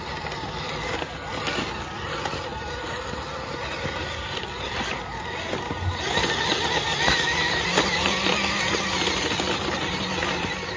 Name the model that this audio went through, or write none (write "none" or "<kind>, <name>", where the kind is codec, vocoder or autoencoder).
none